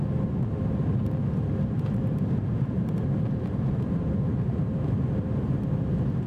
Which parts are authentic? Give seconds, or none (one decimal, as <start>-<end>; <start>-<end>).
0.0-2.4